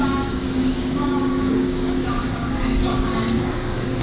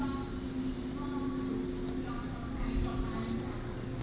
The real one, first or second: second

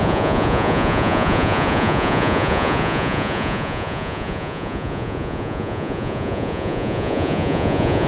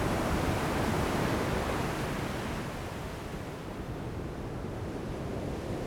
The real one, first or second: second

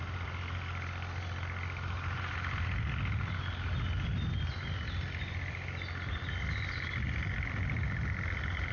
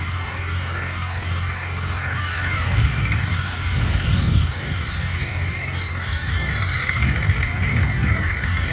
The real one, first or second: first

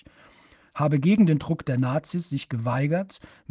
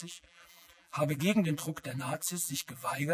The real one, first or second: first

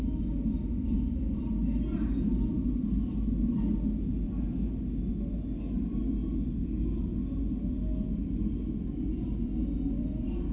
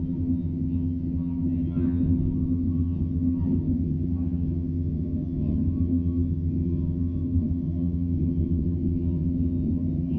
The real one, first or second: first